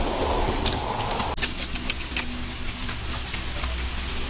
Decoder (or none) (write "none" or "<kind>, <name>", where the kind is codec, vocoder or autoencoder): none